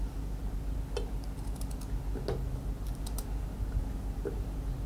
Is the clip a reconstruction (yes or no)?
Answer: no